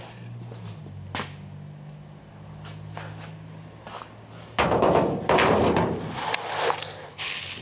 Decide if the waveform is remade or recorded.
recorded